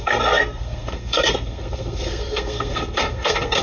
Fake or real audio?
fake